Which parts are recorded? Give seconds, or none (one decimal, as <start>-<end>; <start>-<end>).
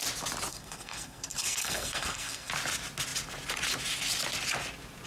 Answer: 0.0-0.5; 2.5-5.1